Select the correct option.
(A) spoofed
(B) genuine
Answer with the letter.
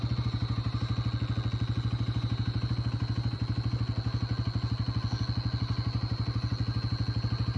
B